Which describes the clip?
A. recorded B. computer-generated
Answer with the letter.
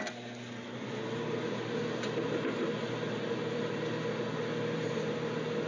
A